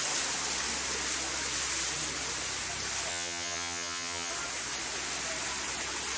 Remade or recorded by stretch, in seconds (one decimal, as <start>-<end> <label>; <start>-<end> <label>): 0.0-3.1 recorded; 3.1-4.3 remade; 4.3-6.2 recorded